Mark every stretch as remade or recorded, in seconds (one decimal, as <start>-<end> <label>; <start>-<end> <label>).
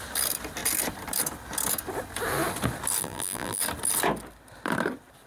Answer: 0.0-3.0 recorded; 3.0-3.6 remade; 3.6-5.3 recorded